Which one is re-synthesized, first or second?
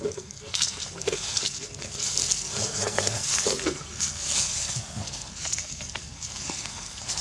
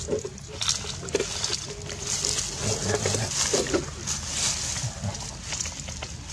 first